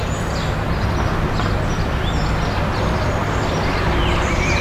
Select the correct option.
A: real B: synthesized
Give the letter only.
A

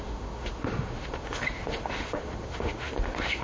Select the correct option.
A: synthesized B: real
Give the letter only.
A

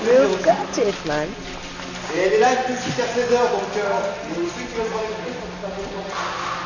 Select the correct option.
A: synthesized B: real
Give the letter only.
B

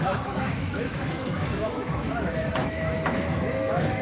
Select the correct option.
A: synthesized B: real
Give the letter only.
A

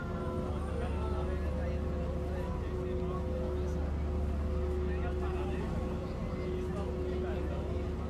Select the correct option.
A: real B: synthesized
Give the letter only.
A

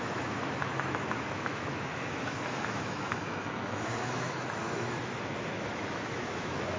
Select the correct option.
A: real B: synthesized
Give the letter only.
B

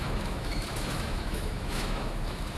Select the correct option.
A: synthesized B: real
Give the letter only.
A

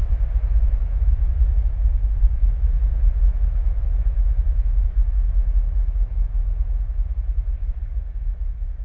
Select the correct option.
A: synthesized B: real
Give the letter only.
A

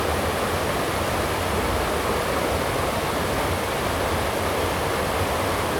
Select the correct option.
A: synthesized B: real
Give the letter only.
B